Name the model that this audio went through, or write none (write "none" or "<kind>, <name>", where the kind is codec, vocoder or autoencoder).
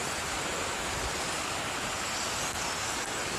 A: none